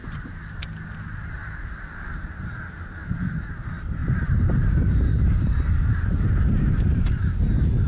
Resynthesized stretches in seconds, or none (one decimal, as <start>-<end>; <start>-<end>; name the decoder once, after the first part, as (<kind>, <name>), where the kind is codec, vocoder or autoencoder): 4.0-6.5 (vocoder, BigVGAN v2)